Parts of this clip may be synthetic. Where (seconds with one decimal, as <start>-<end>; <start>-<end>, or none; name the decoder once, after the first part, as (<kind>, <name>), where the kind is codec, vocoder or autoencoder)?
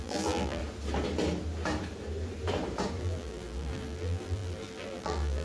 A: 0.0-0.6 (vocoder, BigVGAN v2); 3.0-5.4